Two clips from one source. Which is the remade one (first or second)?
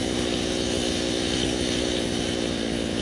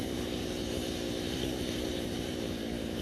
second